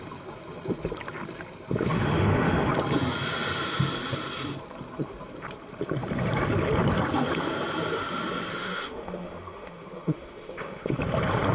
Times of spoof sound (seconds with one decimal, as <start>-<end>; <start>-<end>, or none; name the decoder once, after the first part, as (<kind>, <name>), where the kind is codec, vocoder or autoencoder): 1.9-2.7 (autoencoder, DAC-VAE); 8.5-11.0